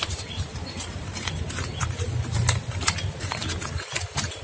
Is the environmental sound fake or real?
fake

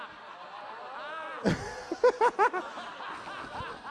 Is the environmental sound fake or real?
real